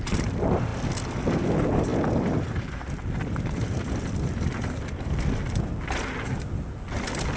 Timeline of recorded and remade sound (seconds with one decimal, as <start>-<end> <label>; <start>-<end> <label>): 0.0-7.4 recorded